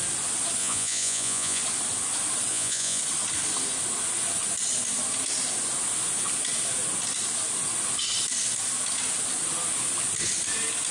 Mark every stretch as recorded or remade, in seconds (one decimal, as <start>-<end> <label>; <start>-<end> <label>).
0.0-0.6 recorded; 0.6-1.6 remade; 1.6-2.5 recorded; 2.5-3.0 remade; 3.0-10.9 recorded

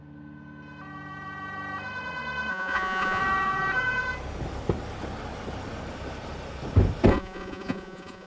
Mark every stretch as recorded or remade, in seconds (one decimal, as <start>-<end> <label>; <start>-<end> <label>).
0.0-2.5 recorded; 2.5-3.2 remade; 3.2-7.1 recorded; 7.1-8.3 remade